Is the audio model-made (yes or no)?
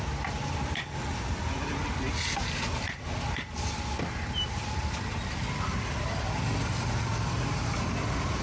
no